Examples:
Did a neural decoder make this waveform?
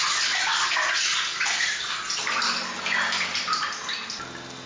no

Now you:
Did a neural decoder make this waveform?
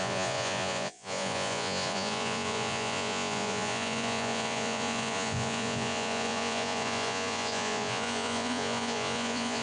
yes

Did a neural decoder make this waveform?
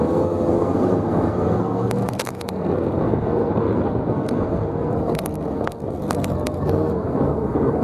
yes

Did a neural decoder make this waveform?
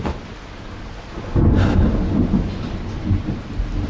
no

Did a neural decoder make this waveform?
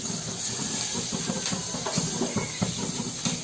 no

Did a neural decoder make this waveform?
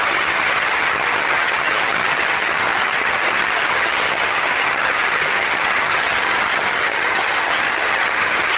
yes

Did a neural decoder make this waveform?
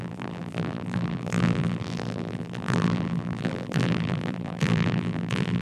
yes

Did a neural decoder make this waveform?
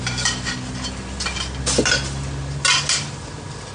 no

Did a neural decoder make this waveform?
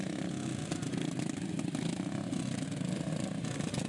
no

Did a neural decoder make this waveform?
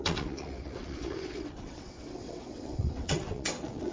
yes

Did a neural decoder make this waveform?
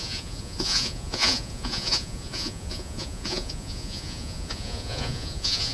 yes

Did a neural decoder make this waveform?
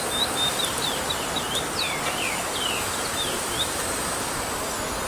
no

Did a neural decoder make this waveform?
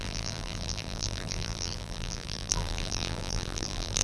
yes